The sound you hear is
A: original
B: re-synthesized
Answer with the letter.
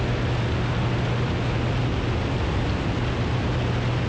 A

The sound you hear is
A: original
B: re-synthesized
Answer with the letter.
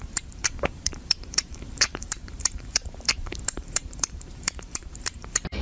B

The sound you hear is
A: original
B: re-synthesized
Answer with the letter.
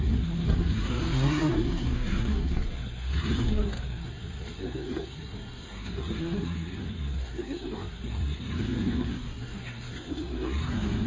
B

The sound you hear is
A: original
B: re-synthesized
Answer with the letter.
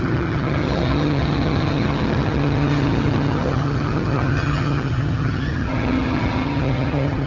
B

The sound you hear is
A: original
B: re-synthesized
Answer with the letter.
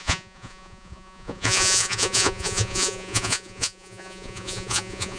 B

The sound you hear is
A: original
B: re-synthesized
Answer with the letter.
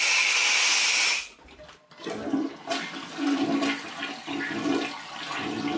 A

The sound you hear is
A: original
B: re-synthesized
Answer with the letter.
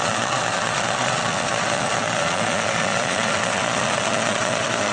B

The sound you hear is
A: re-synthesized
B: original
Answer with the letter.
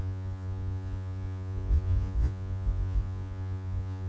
A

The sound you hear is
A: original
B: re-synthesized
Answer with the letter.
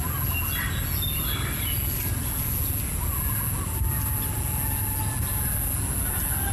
A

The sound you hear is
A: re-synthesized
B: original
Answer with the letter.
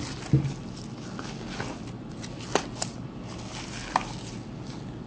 B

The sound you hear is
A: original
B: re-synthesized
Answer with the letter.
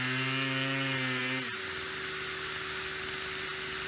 A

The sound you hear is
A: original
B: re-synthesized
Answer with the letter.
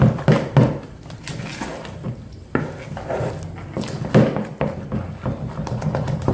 A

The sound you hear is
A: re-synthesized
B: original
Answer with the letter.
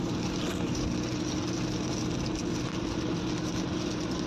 B